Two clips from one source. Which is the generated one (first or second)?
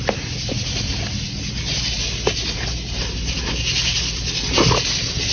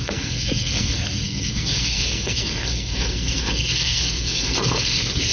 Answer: second